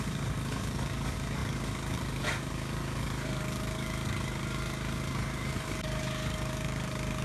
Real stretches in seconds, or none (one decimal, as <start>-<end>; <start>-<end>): none